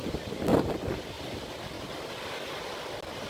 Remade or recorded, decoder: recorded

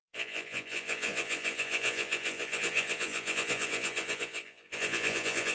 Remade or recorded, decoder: remade, vocoder, Vocos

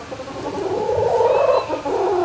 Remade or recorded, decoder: recorded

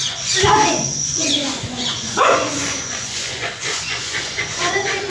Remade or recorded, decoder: remade, vocoder, Vocos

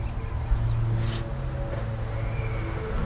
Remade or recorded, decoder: recorded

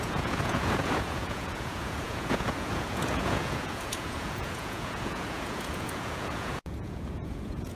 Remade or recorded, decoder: remade, vocoder, Vocos